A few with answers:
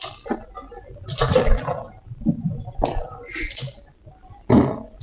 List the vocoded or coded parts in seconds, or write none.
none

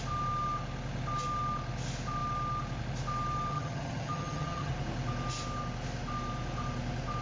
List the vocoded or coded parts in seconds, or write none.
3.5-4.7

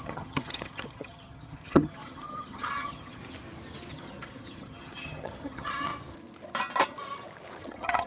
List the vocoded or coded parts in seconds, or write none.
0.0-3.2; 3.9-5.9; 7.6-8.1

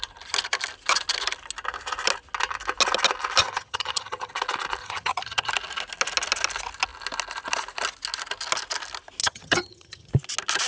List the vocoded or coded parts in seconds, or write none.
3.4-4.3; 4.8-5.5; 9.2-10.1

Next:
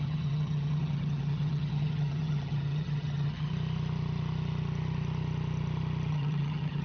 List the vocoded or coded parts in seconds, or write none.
0.0-3.5; 6.1-6.8

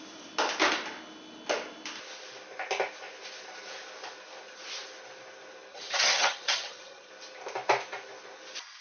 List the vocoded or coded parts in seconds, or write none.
5.7-7.1